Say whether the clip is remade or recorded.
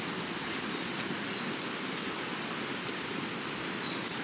recorded